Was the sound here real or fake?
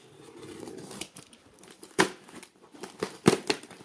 fake